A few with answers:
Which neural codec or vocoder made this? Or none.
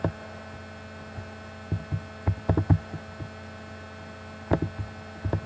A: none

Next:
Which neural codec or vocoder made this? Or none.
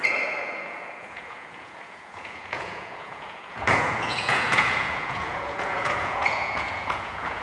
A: vocoder, Vocos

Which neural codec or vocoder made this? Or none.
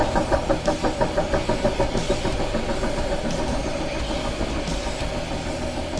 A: none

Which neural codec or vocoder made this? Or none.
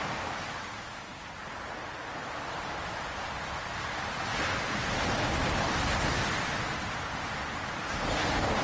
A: none